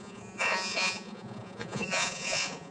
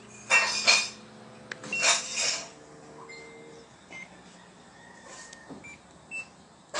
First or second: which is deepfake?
first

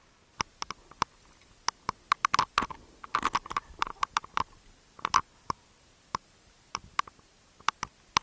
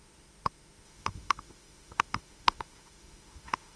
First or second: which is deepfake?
second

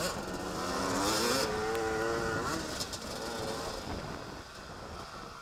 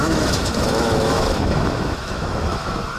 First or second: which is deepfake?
second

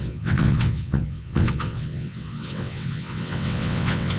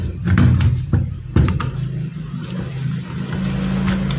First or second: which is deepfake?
first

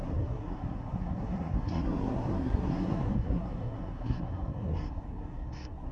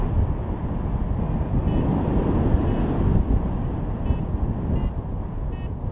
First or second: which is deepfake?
first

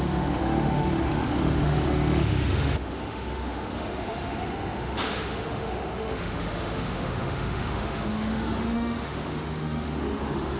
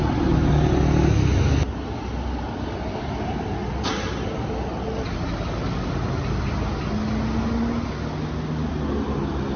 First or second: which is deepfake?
first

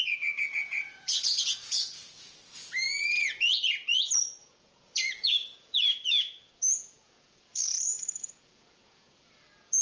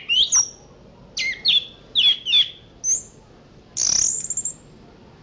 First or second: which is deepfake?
first